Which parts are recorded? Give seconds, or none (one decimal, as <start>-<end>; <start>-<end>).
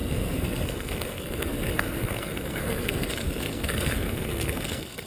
none